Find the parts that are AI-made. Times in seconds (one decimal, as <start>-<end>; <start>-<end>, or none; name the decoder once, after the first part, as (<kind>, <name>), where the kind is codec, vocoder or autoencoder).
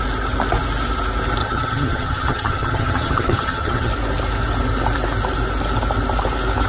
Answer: 1.4-3.9 (vocoder, HiFi-GAN)